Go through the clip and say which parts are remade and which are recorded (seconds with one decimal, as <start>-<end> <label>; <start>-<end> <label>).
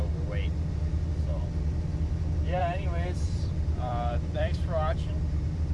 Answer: 0.0-2.6 recorded; 2.6-5.1 remade; 5.1-5.7 recorded